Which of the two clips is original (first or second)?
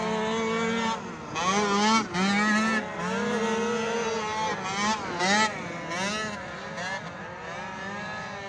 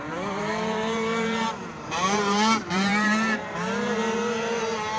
first